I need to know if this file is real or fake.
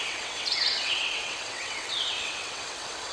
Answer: fake